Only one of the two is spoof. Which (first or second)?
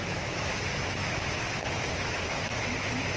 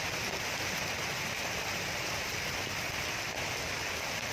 first